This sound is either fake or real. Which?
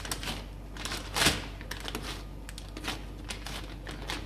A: real